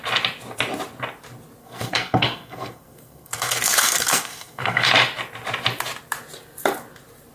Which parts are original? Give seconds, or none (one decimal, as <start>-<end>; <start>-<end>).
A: 0.0-1.6; 4.9-7.3